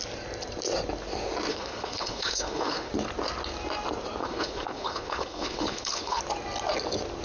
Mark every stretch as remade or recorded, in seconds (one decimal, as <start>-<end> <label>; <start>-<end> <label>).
0.0-1.5 recorded; 1.5-2.9 remade; 2.9-4.2 recorded; 4.2-6.2 remade; 6.2-7.2 recorded